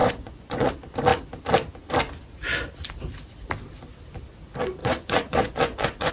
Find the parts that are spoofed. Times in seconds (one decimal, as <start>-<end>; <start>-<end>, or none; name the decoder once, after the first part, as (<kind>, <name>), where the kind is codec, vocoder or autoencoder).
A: 0.0-0.7 (vocoder, Vocos); 4.8-6.1